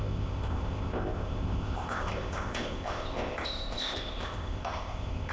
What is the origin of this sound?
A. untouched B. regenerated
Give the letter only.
B